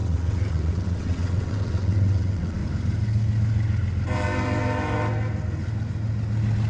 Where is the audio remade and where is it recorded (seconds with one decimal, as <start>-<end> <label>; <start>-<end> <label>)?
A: 0.0-2.6 remade; 2.6-6.7 recorded